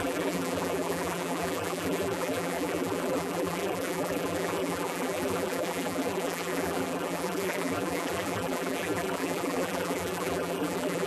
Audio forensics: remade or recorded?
remade